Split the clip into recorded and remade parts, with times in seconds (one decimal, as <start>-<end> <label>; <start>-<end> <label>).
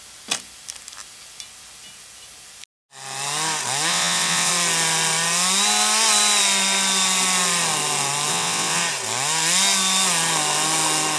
0.0-3.9 recorded; 3.9-4.5 remade; 4.5-8.3 recorded; 8.3-8.8 remade; 8.8-11.2 recorded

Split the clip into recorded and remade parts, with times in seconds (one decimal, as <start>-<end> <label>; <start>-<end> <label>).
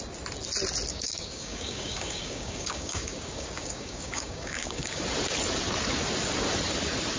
0.0-0.9 recorded; 0.9-5.0 remade; 5.0-7.2 recorded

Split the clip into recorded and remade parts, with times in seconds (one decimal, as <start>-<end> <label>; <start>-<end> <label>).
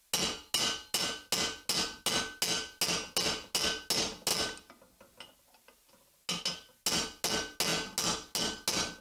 0.0-9.0 recorded